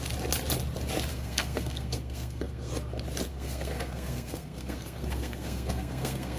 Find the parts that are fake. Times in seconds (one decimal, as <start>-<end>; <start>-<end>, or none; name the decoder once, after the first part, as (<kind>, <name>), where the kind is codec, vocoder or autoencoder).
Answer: 1.1-2.7 (codec, SNAC); 3.3-6.4